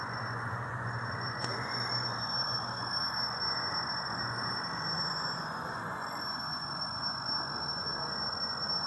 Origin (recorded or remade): remade